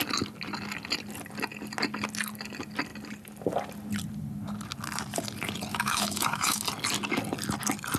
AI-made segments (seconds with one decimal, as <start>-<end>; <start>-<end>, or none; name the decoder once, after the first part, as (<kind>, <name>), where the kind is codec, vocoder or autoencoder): 5.7-6.6 (autoencoder, DAC-VAE)